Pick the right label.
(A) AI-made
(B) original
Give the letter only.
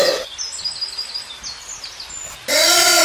B